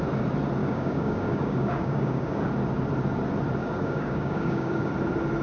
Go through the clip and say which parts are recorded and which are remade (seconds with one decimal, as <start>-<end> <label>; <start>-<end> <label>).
0.0-0.6 recorded; 0.6-2.5 remade; 2.5-3.6 recorded; 3.6-4.9 remade; 4.9-5.4 recorded